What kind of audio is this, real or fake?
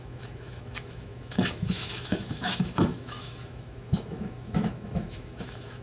fake